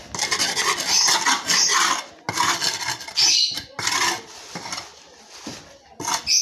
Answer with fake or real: real